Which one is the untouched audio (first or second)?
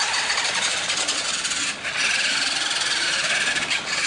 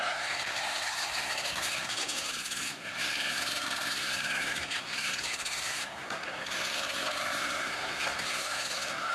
first